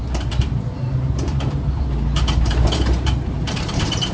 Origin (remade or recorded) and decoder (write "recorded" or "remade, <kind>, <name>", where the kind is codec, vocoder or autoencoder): remade, vocoder, BigVGAN v2